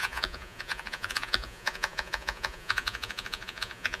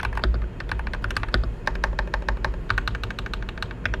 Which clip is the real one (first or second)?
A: second